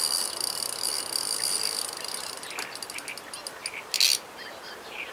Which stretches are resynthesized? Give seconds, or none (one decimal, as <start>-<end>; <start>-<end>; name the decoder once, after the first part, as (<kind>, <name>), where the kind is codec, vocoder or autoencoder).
none

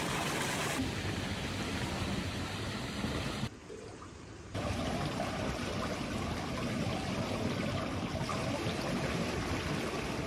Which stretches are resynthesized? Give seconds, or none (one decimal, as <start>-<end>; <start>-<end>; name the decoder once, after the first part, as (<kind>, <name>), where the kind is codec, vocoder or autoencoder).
3.5-5.6 (vocoder, BigVGAN v2); 8.3-9.5